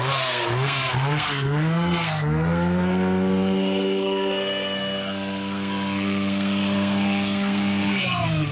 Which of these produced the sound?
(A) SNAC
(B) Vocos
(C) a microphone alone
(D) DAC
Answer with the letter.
A